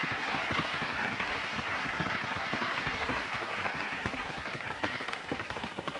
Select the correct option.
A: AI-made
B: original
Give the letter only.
A